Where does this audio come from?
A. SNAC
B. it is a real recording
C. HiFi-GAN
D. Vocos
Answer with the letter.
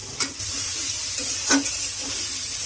B